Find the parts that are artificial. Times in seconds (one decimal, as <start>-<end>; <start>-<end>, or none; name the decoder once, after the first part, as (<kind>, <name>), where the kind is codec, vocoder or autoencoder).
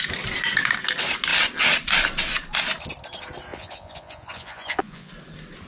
3.5-5.1 (vocoder, Vocos)